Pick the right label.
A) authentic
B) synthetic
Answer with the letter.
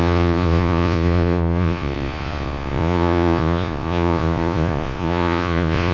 B